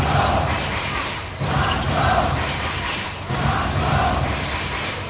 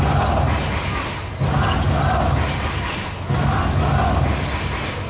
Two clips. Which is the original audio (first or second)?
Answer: second